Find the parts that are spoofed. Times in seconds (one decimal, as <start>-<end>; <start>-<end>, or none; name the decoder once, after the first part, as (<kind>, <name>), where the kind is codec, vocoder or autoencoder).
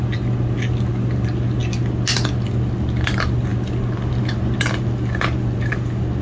none